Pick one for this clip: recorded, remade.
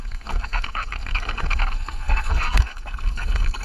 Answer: remade